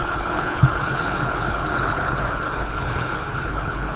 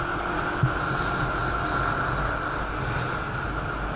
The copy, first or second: first